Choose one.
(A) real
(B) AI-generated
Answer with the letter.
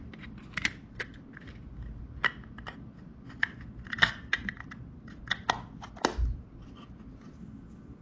A